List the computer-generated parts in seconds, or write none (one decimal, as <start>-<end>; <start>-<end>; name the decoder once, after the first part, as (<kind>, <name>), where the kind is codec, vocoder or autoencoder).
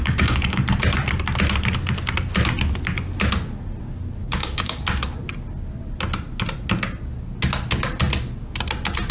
0.0-0.6 (codec, DAC); 4.2-4.8